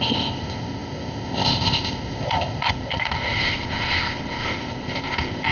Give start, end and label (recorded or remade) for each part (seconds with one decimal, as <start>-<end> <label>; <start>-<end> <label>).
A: 0.0-5.5 remade